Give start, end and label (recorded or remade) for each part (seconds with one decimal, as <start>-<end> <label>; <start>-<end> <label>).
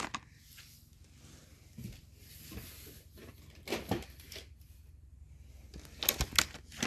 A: 0.0-6.9 recorded